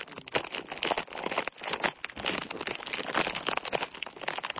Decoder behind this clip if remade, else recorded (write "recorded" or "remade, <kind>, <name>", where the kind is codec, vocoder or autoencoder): recorded